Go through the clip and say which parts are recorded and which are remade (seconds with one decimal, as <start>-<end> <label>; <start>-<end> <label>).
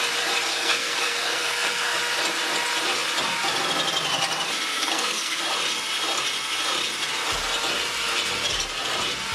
0.0-0.5 recorded; 0.5-2.0 remade; 2.0-4.7 recorded; 4.7-5.4 remade; 5.4-9.3 recorded